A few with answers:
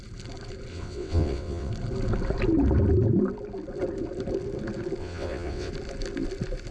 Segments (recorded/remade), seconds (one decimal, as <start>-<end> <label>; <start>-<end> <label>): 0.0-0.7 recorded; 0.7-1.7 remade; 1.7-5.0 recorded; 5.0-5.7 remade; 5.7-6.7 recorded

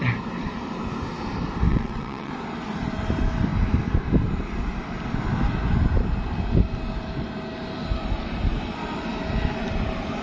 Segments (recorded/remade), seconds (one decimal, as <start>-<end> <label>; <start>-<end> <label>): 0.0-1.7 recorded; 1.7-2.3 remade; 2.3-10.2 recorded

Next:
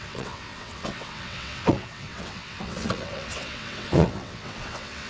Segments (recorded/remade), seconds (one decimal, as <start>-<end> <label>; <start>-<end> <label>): 0.0-5.1 remade